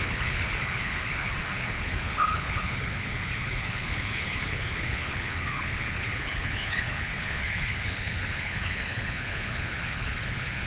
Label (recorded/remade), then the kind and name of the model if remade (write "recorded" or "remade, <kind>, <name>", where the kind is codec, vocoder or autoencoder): remade, codec, HILCodec